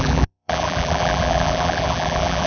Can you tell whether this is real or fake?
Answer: fake